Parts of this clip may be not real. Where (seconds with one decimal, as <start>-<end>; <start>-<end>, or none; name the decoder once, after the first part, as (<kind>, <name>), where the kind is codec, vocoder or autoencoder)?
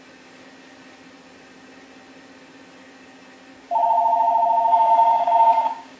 3.5-6.0 (codec, DAC)